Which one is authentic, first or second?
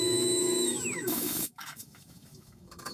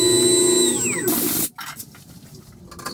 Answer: second